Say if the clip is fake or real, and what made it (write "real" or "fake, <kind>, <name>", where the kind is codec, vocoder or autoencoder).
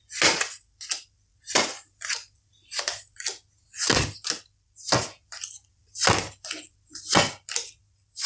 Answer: real